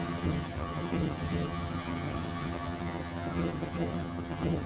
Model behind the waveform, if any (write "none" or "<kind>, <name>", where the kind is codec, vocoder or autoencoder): vocoder, HiFi-GAN